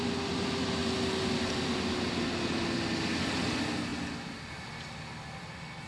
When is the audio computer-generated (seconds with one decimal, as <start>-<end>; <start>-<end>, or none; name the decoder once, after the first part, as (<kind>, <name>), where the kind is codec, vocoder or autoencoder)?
none